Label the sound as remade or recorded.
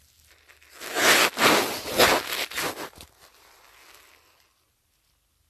recorded